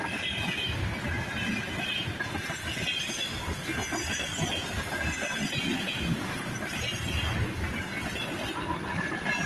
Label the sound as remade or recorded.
recorded